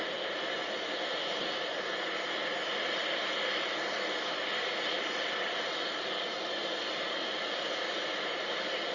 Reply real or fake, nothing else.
real